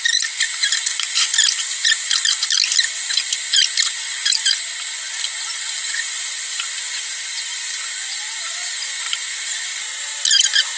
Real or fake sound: real